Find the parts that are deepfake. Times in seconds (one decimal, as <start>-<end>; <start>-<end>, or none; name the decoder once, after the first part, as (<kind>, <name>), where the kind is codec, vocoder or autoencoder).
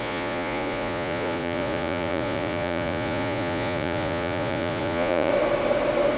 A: 0.0-5.3 (vocoder, Vocos)